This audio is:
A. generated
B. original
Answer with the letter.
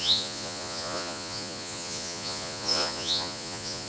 A